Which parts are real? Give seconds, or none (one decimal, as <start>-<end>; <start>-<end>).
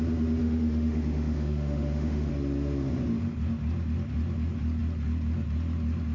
0.0-0.4; 2.3-6.1